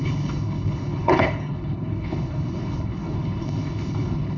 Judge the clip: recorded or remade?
remade